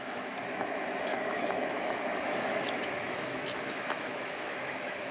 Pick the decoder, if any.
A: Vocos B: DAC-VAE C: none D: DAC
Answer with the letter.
B